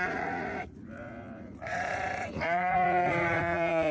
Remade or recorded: remade